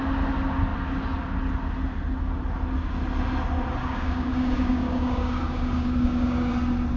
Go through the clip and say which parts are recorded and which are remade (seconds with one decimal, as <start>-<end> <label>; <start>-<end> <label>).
0.0-3.8 recorded; 3.8-6.5 remade; 6.5-7.0 recorded